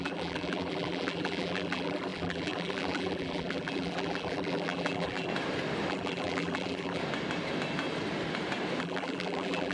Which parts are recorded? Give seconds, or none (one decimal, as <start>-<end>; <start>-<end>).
5.3-5.9; 7.0-8.8